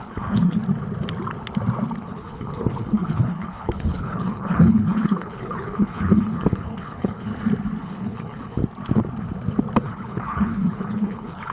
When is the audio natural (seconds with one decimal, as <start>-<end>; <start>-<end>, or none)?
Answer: 0.6-2.0; 7.3-7.8; 8.6-9.8